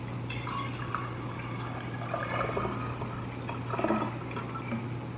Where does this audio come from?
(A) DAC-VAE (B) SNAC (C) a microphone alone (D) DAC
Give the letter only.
C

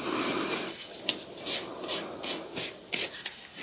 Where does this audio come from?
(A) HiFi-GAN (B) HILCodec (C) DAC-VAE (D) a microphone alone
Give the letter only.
D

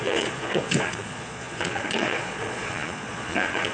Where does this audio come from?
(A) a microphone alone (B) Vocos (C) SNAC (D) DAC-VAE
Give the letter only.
B